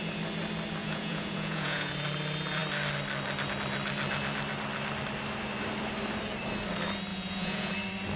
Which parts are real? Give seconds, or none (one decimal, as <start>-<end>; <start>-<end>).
0.0-0.8; 1.9-7.1; 7.7-8.2